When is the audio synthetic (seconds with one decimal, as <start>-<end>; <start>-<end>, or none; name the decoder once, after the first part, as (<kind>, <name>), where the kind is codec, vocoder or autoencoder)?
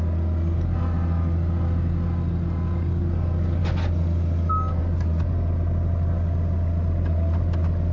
none